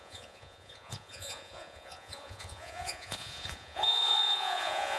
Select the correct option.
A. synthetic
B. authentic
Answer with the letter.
A